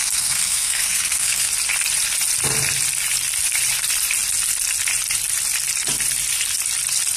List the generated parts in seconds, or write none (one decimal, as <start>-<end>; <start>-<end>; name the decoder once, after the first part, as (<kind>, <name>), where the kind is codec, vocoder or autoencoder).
0.0-1.5 (codec, SNAC)